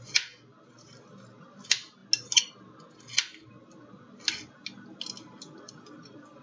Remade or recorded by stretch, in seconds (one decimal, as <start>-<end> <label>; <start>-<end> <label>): 0.0-6.4 recorded